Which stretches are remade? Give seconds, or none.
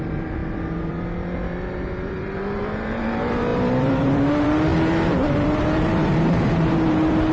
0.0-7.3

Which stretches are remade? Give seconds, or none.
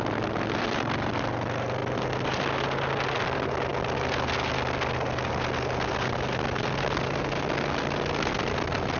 none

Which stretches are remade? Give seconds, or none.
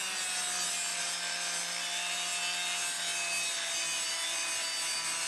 0.9-2.1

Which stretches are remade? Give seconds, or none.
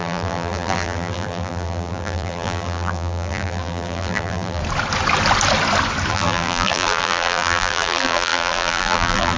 0.0-4.6; 6.1-9.4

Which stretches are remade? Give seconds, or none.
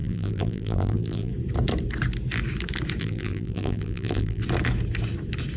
0.0-1.3; 3.0-4.4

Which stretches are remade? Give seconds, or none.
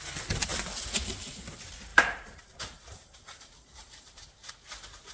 1.9-4.5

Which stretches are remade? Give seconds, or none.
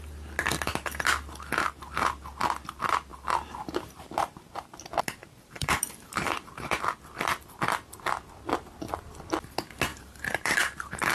3.1-4.8; 5.2-6.8; 9.9-11.1